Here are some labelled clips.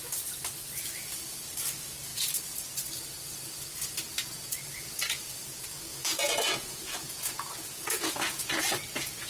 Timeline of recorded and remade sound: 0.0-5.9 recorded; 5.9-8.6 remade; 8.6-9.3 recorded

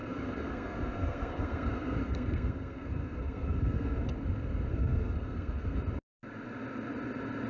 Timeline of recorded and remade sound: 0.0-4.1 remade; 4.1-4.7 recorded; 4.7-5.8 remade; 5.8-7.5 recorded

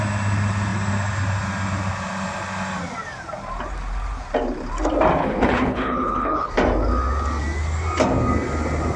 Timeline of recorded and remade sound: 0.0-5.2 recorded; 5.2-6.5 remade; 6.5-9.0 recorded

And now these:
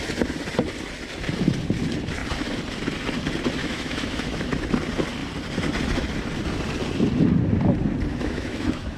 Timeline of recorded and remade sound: 0.0-3.6 recorded; 3.6-4.6 remade; 4.6-8.1 recorded; 8.1-9.0 remade